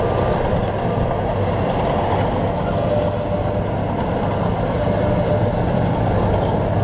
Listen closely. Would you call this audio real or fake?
real